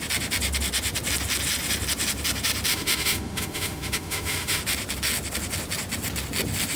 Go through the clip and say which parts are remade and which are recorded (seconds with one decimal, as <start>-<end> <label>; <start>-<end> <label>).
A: 0.0-2.7 recorded; 2.7-4.6 remade; 4.6-6.8 recorded